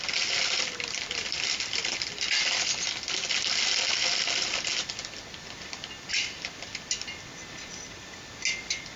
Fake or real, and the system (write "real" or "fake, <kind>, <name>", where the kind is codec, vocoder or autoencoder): real